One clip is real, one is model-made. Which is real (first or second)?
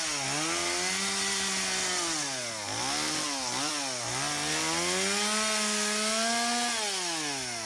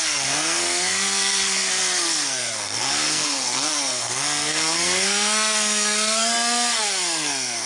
first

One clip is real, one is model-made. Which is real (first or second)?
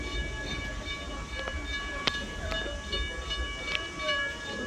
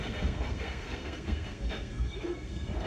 first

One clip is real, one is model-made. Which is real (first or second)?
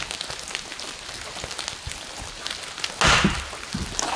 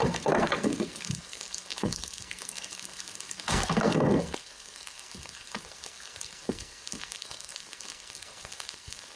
first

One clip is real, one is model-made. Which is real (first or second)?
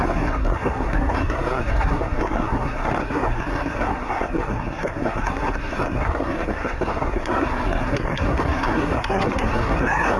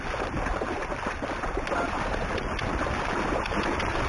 second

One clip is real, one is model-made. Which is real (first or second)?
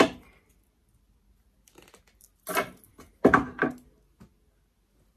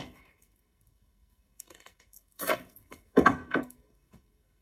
first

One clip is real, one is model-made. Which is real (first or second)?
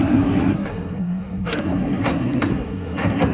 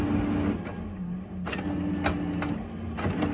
second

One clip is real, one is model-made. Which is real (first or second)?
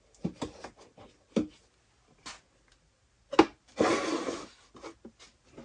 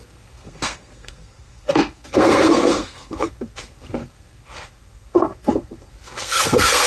first